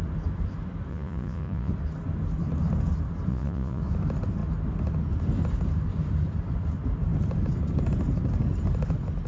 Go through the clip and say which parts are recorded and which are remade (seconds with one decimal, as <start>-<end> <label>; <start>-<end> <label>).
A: 0.0-0.9 recorded; 0.9-1.7 remade; 1.7-3.3 recorded; 3.3-3.8 remade; 3.8-9.3 recorded

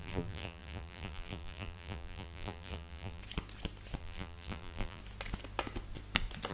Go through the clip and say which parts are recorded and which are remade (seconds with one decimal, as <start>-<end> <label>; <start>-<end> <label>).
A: 0.0-3.2 remade; 3.2-4.0 recorded; 4.0-5.0 remade; 5.0-6.5 recorded

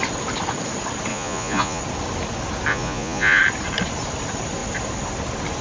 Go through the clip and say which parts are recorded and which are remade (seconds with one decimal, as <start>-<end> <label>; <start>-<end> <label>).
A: 0.0-1.1 recorded; 1.1-1.8 remade; 1.8-2.7 recorded; 2.7-3.4 remade; 3.4-5.6 recorded

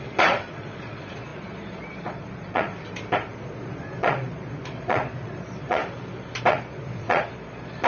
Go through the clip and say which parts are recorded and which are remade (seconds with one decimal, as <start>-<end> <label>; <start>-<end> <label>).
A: 0.0-2.7 remade; 2.7-3.4 recorded; 3.4-5.8 remade; 5.8-6.5 recorded; 6.5-7.9 remade

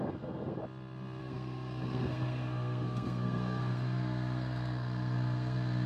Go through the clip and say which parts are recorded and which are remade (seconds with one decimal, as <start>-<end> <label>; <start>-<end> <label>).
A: 0.0-0.6 remade; 0.6-1.2 recorded; 1.2-5.9 remade

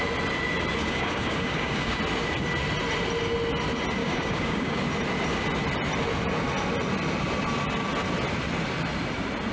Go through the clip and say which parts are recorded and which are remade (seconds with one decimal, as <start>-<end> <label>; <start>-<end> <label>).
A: 0.0-0.8 recorded; 0.8-2.0 remade; 2.0-4.0 recorded; 4.0-4.8 remade; 4.8-9.5 recorded

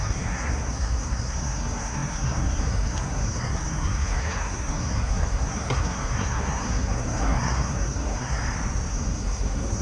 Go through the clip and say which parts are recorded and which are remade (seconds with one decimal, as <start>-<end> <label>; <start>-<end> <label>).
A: 0.0-8.4 remade; 8.4-8.9 recorded; 8.9-9.8 remade

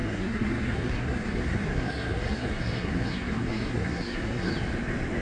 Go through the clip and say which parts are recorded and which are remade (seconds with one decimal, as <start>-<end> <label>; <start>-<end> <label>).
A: 0.0-4.5 remade; 4.5-5.2 recorded